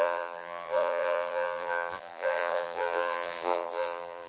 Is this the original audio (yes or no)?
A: no